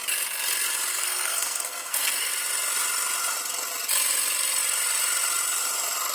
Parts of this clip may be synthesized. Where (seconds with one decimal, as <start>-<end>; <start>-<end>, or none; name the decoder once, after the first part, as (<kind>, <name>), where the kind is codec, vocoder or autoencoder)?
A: 0.9-2.3 (codec, SNAC)